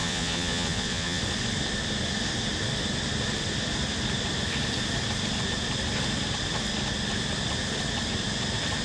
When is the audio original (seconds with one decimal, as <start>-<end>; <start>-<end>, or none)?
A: 1.2-8.8